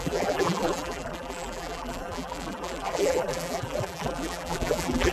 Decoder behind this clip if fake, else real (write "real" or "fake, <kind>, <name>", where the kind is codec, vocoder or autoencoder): fake, vocoder, BigVGAN v2